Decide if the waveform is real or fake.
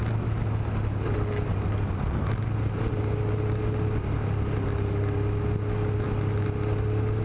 real